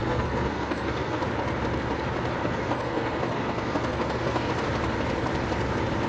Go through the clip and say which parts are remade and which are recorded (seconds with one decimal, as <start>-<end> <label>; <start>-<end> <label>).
0.0-1.2 remade; 1.2-2.4 recorded; 2.4-4.5 remade; 4.5-6.1 recorded